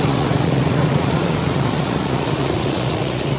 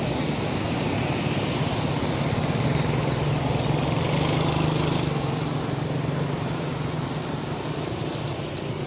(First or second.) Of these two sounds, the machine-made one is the first